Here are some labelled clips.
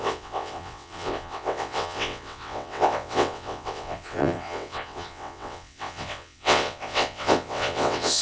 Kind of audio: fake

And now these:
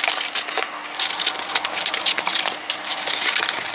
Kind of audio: real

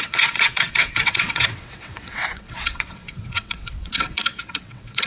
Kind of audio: fake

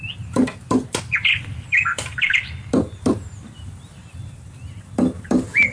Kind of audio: real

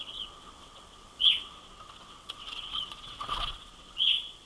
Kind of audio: fake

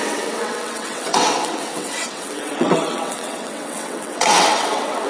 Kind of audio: fake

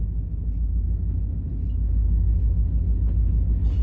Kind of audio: real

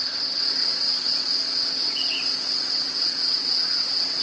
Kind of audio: fake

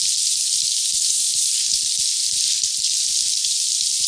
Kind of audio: real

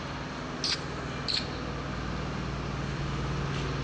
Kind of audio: real